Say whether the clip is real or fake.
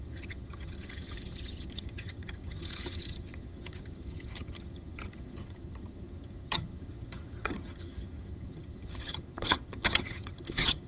fake